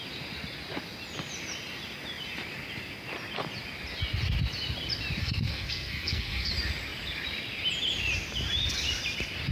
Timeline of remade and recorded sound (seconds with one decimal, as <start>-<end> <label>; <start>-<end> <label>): 0.0-5.2 recorded; 5.2-6.5 remade; 6.5-9.5 recorded